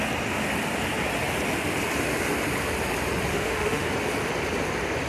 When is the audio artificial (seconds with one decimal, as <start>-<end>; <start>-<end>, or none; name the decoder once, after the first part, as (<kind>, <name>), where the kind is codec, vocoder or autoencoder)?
3.3-3.9 (autoencoder, DAC-VAE)